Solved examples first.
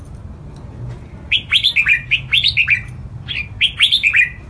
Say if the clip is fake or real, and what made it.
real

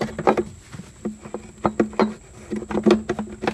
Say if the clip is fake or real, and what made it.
real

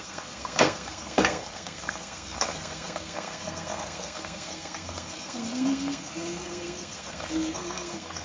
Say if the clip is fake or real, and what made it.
fake, codec, SNAC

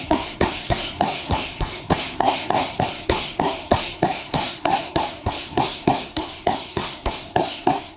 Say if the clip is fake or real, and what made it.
fake, codec, SNAC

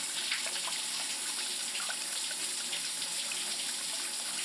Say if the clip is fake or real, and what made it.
real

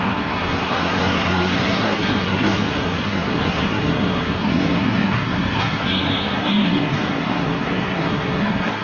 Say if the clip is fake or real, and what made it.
fake, codec, SNAC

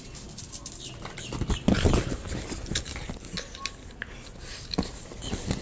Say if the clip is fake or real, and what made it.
real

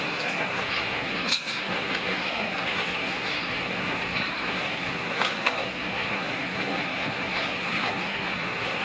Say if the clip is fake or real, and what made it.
fake, codec, SNAC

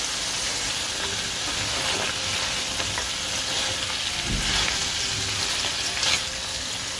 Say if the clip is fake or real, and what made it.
real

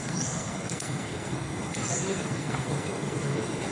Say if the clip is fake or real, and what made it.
fake, codec, SNAC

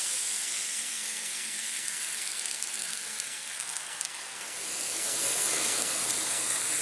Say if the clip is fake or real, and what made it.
fake, codec, SNAC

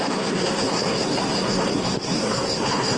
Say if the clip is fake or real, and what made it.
fake, codec, SNAC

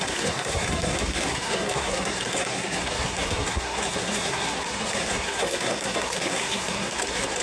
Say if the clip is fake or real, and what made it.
fake, codec, SNAC